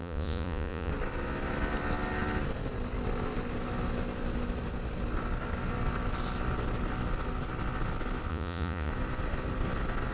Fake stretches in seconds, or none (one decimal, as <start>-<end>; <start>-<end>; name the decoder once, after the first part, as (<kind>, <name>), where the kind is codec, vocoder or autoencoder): 0.0-0.9 (vocoder, Vocos); 8.3-8.9